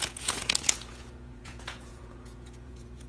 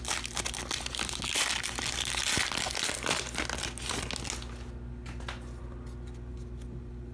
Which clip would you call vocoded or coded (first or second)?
first